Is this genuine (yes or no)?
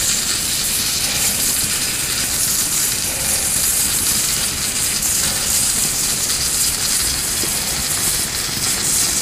yes